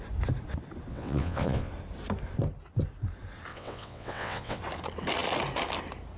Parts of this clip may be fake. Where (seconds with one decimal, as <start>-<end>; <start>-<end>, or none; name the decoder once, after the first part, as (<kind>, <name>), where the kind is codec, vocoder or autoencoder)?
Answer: 0.9-1.7 (vocoder, WaveNeXt); 3.5-4.6